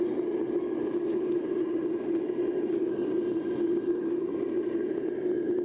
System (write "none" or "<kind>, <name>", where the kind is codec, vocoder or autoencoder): none